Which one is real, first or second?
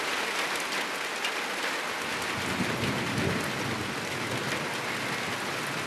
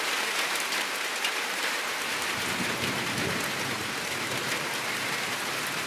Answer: first